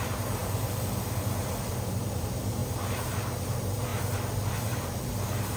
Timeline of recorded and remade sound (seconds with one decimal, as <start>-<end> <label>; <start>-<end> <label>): 0.0-3.9 remade; 3.9-4.5 recorded; 4.5-5.6 remade